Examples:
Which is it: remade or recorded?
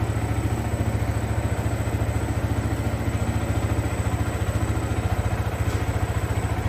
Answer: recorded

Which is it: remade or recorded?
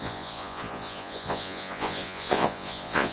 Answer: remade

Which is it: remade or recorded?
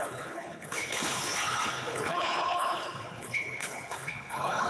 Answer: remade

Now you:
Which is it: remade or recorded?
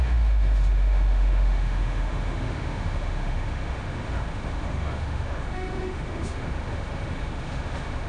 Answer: remade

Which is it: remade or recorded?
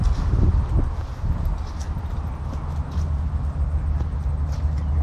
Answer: recorded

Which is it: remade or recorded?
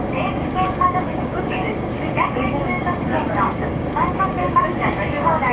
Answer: remade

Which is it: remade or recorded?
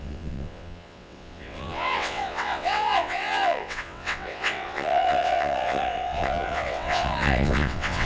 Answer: remade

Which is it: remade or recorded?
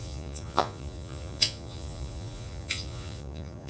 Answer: remade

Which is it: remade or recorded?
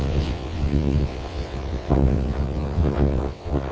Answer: remade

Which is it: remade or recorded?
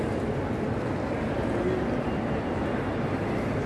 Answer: recorded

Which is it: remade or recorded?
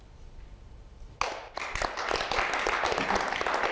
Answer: recorded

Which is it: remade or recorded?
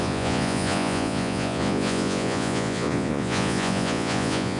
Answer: remade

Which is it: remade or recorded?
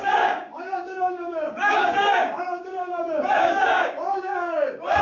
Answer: remade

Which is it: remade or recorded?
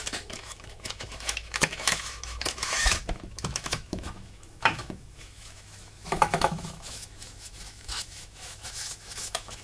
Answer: remade